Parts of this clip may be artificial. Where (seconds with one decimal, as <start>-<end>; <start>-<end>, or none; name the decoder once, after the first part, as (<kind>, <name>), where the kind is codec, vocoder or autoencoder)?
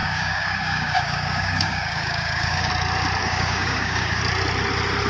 0.0-2.7 (codec, DAC); 3.2-4.2